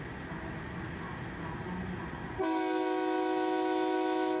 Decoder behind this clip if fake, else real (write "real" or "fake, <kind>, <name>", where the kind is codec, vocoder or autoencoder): real